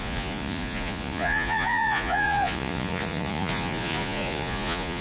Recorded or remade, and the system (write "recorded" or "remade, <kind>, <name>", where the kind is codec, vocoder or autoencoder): remade, vocoder, Vocos